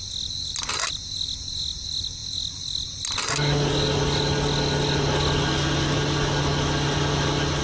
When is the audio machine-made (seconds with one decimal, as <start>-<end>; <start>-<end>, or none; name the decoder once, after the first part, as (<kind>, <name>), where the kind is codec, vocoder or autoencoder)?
none